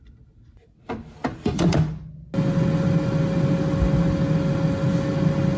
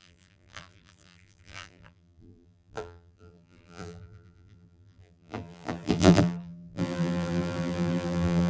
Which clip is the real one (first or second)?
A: first